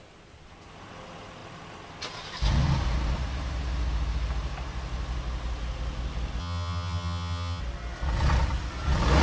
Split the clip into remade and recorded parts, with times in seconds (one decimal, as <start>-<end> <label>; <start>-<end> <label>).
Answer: 0.0-6.4 recorded; 6.4-7.6 remade; 7.6-9.2 recorded